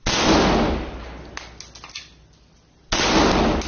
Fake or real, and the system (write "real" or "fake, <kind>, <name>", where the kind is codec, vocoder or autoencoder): real